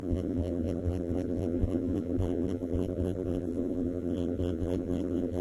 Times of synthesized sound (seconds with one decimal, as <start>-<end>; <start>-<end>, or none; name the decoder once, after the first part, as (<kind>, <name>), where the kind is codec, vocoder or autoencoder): 0.0-5.4 (vocoder, BigVGAN v2)